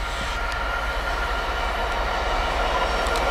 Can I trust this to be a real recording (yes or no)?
yes